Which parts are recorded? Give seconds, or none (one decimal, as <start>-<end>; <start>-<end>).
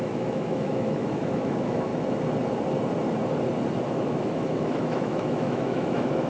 1.9-3.9